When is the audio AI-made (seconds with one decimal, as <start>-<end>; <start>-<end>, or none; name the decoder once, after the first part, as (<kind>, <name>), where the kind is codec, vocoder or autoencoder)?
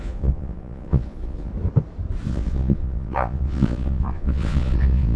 0.0-1.5 (vocoder, Vocos); 2.3-5.2